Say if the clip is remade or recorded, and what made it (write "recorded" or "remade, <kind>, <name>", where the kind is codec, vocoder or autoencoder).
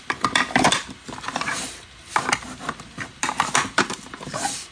recorded